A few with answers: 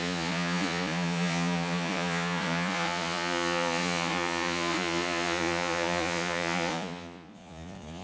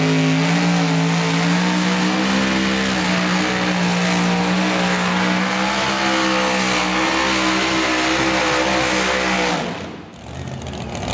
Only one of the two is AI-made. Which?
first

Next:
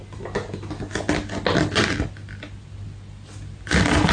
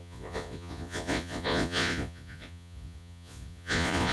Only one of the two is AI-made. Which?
second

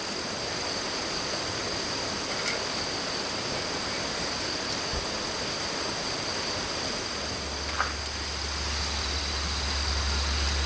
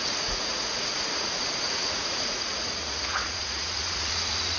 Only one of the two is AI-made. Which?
second